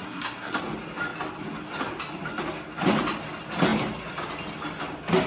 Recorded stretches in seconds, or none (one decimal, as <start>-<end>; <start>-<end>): 0.5-5.3